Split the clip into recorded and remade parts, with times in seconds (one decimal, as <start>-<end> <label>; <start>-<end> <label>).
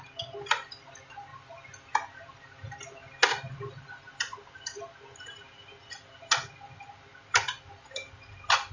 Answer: 0.0-8.7 recorded